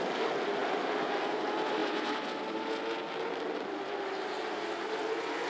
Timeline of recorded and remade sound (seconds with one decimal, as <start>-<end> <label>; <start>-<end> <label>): 0.0-5.5 recorded